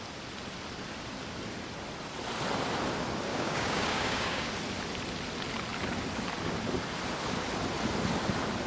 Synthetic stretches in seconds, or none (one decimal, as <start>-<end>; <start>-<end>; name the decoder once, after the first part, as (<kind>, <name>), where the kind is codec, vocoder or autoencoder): 3.3-4.5 (codec, DAC)